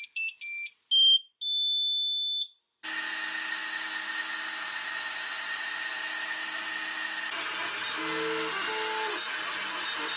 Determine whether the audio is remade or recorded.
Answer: recorded